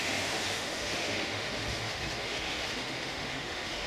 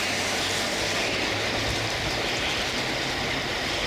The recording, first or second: second